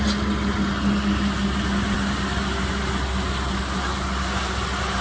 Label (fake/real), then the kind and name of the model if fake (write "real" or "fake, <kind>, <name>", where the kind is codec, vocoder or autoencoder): real